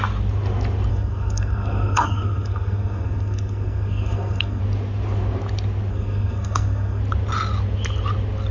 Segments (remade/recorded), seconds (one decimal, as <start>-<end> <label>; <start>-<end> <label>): 0.0-0.9 recorded; 0.9-4.6 remade; 4.6-5.9 recorded; 5.9-7.0 remade; 7.0-8.5 recorded